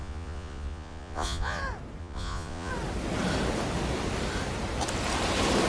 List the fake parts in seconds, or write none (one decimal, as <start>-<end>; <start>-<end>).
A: 0.0-1.6; 2.0-2.7